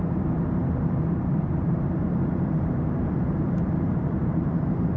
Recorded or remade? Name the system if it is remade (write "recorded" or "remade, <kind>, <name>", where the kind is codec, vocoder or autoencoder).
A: remade, vocoder, BigVGAN v2